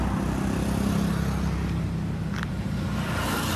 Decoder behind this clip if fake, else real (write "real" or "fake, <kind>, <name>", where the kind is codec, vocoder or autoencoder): real